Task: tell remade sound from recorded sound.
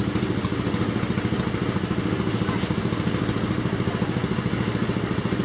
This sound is recorded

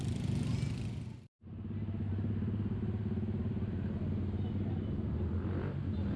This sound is recorded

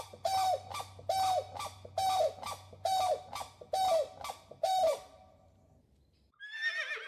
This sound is recorded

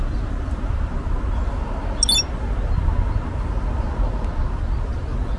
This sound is recorded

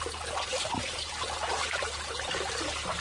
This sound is remade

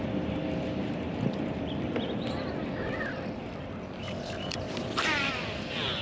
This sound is remade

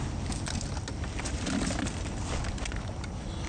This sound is recorded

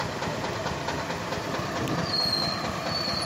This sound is recorded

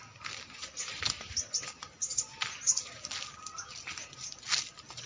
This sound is recorded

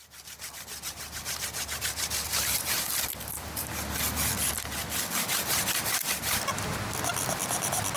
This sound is remade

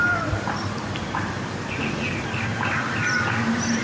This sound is recorded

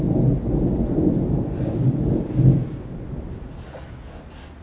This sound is recorded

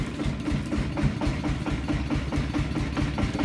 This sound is recorded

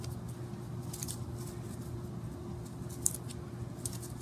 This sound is recorded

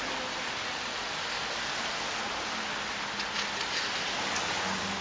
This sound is recorded